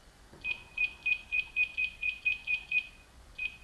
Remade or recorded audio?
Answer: remade